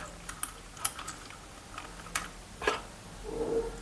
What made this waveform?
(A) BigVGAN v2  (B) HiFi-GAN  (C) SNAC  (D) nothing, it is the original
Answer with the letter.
D